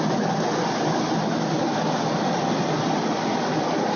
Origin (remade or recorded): recorded